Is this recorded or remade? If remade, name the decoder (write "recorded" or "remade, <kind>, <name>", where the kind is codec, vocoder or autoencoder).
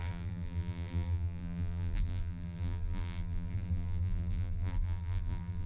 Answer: remade, vocoder, BigVGAN v2